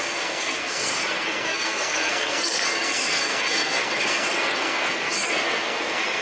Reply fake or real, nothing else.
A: fake